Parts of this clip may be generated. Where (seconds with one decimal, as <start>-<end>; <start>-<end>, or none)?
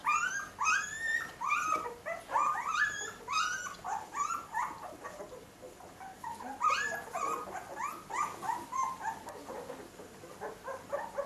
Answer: none